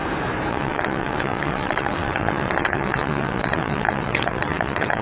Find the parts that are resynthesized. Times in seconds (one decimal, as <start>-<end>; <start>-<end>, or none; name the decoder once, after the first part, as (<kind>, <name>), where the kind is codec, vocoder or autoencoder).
0.5-5.0 (vocoder, WaveNeXt)